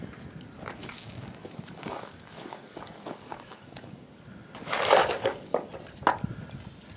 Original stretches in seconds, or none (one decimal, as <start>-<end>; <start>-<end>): 0.0-0.8; 4.2-5.0; 5.7-7.0